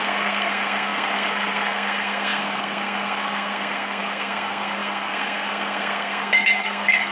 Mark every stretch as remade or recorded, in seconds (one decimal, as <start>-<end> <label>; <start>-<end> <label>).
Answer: 0.0-7.1 remade